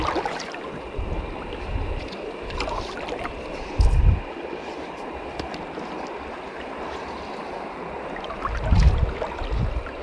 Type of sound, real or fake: real